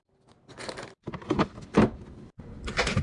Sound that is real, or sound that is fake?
real